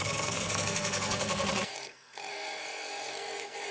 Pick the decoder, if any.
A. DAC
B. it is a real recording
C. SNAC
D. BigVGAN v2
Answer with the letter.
C